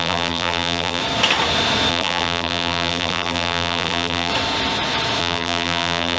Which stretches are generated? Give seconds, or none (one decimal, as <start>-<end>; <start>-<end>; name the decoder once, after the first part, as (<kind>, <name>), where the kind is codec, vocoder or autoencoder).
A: 0.0-1.0 (vocoder, BigVGAN v2); 1.9-4.3; 5.2-6.2